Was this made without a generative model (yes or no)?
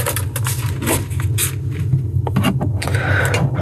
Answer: yes